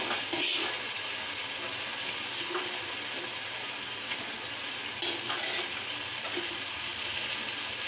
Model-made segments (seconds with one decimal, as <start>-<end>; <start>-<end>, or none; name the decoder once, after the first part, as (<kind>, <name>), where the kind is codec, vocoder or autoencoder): none